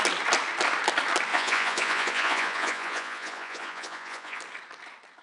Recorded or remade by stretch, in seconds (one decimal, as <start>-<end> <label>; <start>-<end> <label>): 0.0-1.3 recorded; 1.3-4.4 remade; 4.4-5.2 recorded

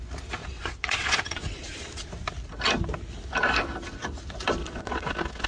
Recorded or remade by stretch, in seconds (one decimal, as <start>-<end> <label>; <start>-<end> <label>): 0.0-0.4 recorded; 0.4-2.1 remade; 2.1-4.6 recorded; 4.6-5.1 remade; 5.1-5.5 recorded

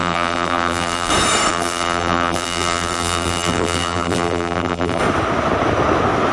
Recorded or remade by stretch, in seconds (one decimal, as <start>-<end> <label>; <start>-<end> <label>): 0.0-1.1 remade; 1.1-1.5 recorded; 1.5-5.0 remade; 5.0-6.3 recorded

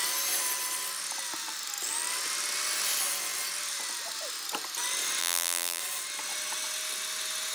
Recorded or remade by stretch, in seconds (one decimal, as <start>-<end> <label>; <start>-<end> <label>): 0.0-5.2 recorded; 5.2-5.8 remade; 5.8-7.5 recorded

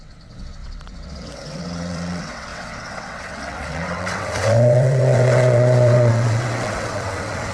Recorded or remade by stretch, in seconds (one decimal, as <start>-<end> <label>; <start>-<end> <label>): 0.0-7.5 remade